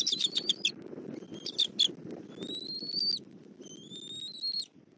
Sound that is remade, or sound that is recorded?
recorded